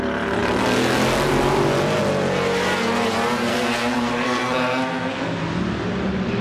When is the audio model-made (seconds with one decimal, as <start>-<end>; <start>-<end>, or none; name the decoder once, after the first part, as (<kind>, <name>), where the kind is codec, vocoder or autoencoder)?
3.5-5.4 (codec, SNAC)